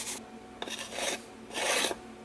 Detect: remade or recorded recorded